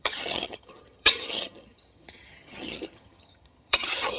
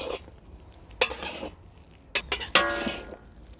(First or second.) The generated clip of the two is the first